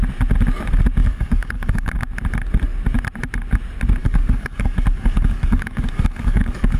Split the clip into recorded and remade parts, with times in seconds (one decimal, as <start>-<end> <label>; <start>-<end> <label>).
0.0-1.0 recorded; 1.0-1.9 remade; 1.9-4.0 recorded; 4.0-6.8 remade